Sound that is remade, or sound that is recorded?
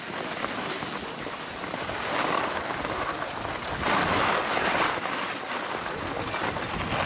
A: recorded